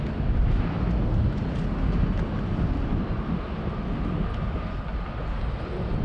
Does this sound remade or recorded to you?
recorded